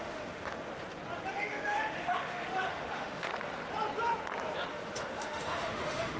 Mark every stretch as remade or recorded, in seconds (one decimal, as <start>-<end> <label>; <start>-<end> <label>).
0.0-0.7 remade; 0.7-1.3 recorded; 1.3-3.3 remade; 3.3-4.7 recorded; 4.7-6.2 remade